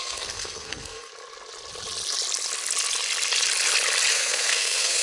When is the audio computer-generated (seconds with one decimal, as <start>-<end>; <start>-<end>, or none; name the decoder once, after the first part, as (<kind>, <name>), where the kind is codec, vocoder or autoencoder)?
0.0-1.1 (codec, SNAC); 4.1-5.0